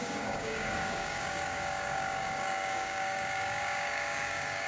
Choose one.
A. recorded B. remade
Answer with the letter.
B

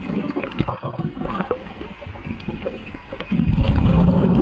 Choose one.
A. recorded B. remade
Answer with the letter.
B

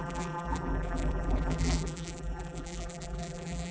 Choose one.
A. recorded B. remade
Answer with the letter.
B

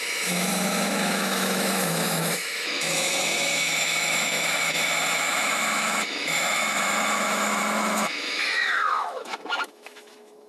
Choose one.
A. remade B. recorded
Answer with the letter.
A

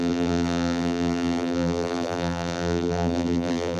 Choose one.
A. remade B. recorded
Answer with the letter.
A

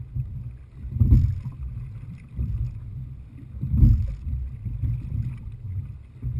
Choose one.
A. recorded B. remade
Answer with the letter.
A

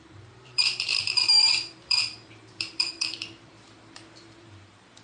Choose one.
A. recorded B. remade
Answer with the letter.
B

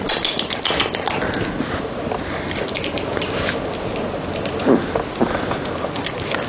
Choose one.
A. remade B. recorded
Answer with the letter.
B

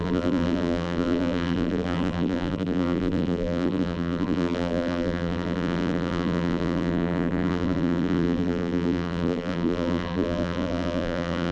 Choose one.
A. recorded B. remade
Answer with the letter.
B